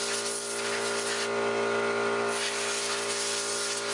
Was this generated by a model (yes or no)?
no